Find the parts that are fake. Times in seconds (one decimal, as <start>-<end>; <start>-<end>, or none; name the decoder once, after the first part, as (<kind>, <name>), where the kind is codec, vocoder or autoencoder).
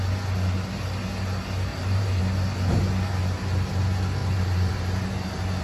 1.7-2.2 (vocoder, BigVGAN v2); 4.2-5.6